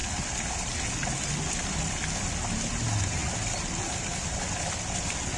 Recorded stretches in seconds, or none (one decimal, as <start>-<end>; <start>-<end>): 0.0-5.4